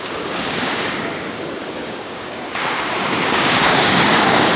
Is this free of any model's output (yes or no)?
no